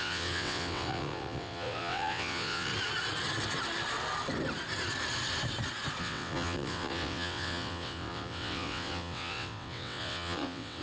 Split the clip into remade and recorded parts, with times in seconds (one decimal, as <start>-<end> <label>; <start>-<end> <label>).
0.0-2.7 remade; 2.7-6.0 recorded; 6.0-10.8 remade